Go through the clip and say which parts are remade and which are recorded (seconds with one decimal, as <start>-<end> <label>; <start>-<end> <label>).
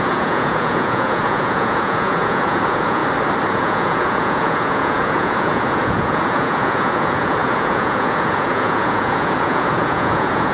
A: 0.0-3.0 remade; 3.0-3.5 recorded; 3.5-10.5 remade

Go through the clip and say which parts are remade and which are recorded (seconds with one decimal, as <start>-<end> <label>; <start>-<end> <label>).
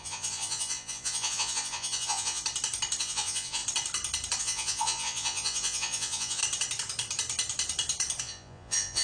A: 0.0-2.4 remade; 2.4-3.0 recorded; 3.0-3.6 remade; 3.6-4.4 recorded; 4.4-6.4 remade; 6.4-8.2 recorded; 8.2-9.0 remade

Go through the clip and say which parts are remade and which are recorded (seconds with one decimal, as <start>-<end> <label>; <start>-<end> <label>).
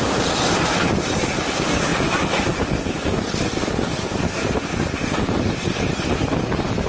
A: 0.0-6.9 recorded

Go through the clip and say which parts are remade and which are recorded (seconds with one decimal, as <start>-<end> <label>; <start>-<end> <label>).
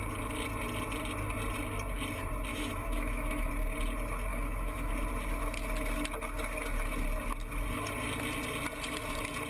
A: 0.0-2.5 recorded; 2.5-3.5 remade; 3.5-4.3 recorded; 4.3-4.9 remade; 4.9-9.5 recorded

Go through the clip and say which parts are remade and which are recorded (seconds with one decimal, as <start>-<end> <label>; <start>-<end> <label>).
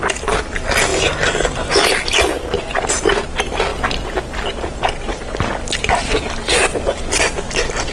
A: 0.0-7.9 recorded